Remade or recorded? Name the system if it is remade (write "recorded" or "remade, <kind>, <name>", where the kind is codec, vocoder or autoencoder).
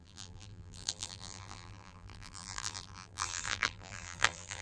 remade, vocoder, BigVGAN v2